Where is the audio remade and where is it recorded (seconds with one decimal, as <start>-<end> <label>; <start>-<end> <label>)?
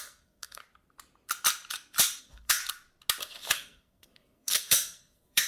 0.0-0.6 remade; 0.6-2.2 recorded; 2.2-2.6 remade; 2.6-3.2 recorded; 3.2-5.5 remade